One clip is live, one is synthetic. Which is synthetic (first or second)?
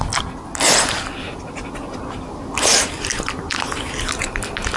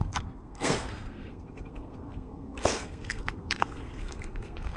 second